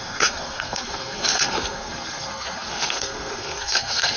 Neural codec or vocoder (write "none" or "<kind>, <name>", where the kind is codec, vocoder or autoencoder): codec, SNAC